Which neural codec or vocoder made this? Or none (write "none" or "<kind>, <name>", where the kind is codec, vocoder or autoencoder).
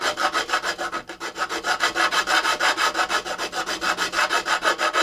none